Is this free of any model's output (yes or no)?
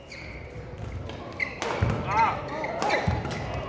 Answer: yes